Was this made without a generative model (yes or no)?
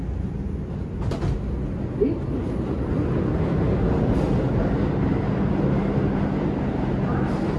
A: yes